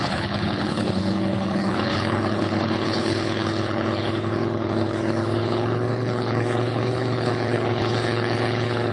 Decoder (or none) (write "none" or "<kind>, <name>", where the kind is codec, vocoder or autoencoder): codec, HILCodec